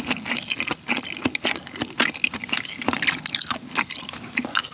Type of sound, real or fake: real